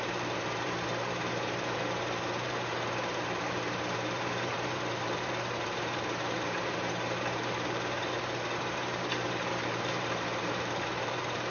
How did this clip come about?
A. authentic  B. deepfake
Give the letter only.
B